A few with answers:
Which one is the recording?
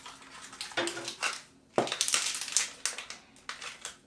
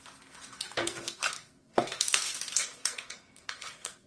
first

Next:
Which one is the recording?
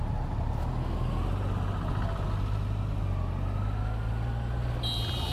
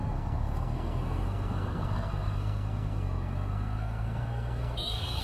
first